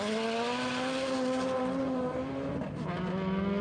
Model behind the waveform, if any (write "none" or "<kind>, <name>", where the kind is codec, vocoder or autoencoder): none